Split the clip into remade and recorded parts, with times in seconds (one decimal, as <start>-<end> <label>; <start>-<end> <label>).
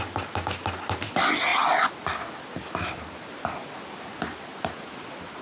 0.0-5.4 recorded